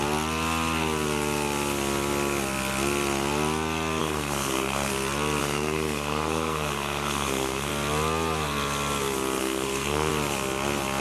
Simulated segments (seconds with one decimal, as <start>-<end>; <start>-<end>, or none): 4.0-4.9; 5.4-7.7; 9.4-10.1

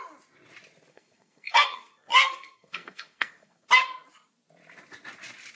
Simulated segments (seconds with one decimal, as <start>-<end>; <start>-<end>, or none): 0.9-3.7

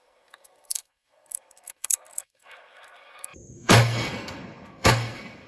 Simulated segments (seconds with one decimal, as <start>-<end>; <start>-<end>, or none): 0.0-5.5

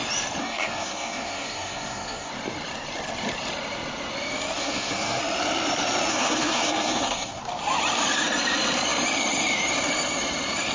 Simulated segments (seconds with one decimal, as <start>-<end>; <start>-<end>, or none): 0.4-2.3; 4.6-5.2; 6.1-7.4

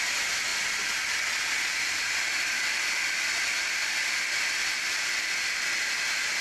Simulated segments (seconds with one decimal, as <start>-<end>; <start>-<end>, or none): none